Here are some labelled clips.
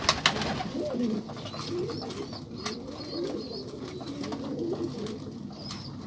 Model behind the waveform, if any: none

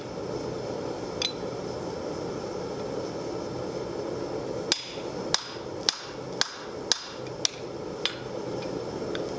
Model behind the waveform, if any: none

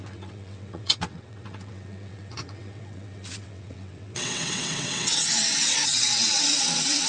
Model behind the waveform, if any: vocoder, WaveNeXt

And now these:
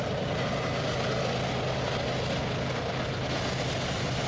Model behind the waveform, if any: none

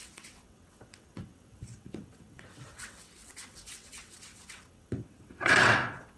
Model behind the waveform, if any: vocoder, WaveNeXt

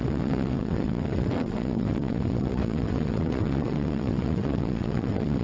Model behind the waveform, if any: vocoder, WaveNeXt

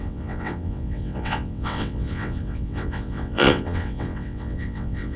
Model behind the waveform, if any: vocoder, WaveNeXt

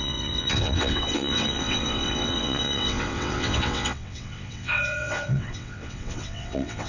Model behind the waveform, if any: vocoder, WaveNeXt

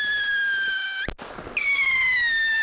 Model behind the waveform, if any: none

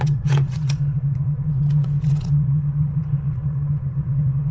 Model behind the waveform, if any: vocoder, WaveNeXt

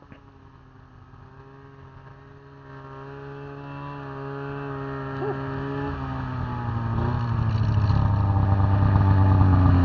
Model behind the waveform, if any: none